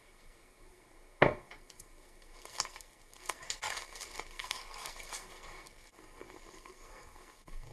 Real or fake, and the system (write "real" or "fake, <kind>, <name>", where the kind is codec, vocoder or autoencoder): fake, codec, SNAC